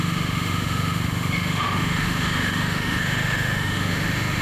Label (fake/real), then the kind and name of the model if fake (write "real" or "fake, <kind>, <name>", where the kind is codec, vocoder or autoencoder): fake, autoencoder, DAC-VAE